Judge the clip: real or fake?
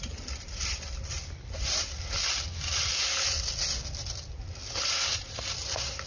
real